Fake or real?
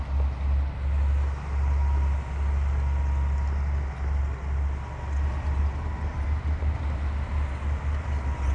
real